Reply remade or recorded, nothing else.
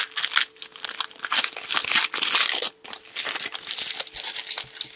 recorded